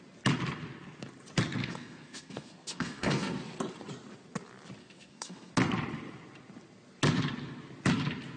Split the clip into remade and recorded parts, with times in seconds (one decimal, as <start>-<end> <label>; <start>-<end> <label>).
0.0-1.6 recorded; 1.6-3.4 remade; 3.4-4.8 recorded; 4.8-5.5 remade; 5.5-8.4 recorded